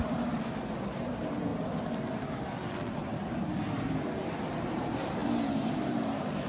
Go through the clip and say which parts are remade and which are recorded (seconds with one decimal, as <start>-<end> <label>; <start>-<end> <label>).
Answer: 0.0-1.5 remade; 1.5-4.6 recorded; 4.6-6.5 remade